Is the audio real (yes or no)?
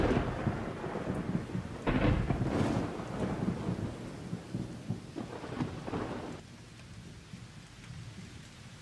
yes